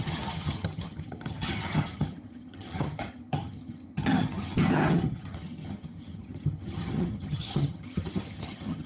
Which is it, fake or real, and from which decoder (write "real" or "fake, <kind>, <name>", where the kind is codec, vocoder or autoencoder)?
fake, vocoder, HiFi-GAN